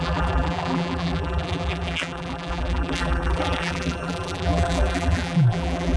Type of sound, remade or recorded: remade